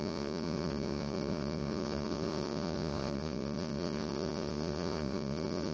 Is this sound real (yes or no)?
no